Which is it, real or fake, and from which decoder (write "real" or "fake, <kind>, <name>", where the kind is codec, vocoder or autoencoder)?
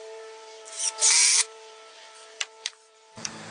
fake, vocoder, BigVGAN v2